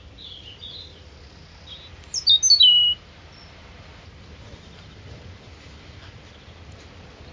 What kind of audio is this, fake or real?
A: real